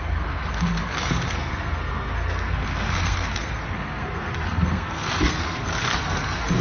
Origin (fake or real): fake